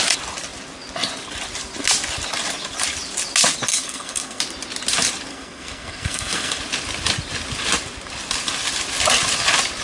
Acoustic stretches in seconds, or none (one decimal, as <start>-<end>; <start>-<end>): 0.0-3.7; 4.4-5.3; 6.6-9.8